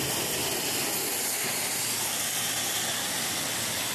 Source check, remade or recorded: recorded